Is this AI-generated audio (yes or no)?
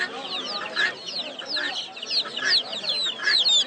no